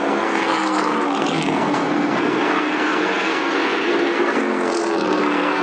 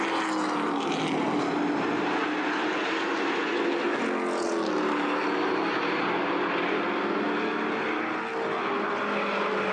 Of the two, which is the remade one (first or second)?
first